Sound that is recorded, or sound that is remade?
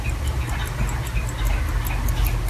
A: recorded